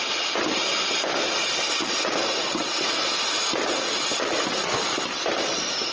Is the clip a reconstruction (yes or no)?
no